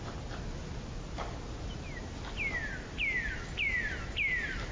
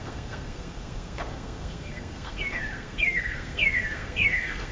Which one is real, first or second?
first